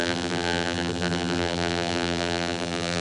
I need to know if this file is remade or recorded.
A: remade